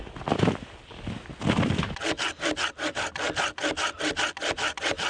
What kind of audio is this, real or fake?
real